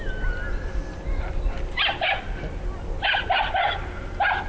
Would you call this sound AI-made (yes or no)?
no